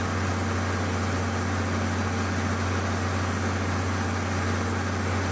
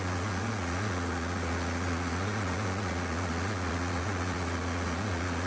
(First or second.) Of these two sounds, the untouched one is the first